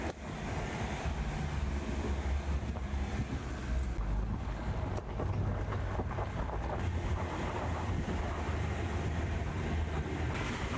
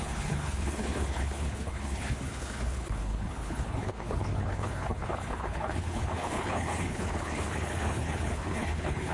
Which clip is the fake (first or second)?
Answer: second